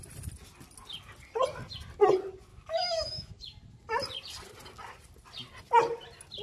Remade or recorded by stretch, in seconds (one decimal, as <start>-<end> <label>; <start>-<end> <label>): 0.0-2.5 recorded; 2.5-3.3 remade; 3.3-6.4 recorded